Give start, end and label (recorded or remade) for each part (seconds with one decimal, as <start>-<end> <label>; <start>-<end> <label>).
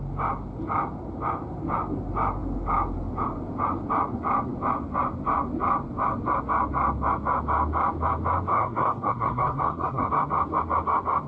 0.0-8.5 recorded; 8.5-10.1 remade; 10.1-11.3 recorded